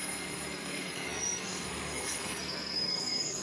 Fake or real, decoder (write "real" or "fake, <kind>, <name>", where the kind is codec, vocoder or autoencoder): fake, codec, SNAC